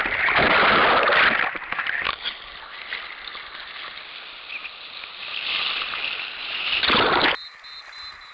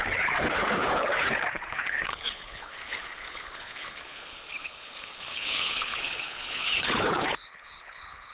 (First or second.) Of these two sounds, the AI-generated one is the second